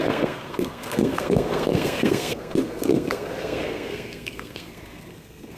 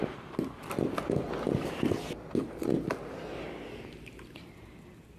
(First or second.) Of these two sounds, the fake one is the first